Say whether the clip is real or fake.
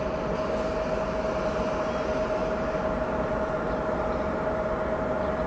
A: real